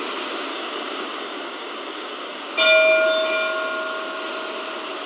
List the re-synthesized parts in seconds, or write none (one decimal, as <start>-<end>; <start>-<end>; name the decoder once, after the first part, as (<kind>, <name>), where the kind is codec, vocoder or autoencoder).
0.5-2.5 (codec, DAC)